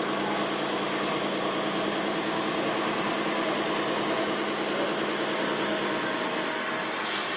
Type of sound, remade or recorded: recorded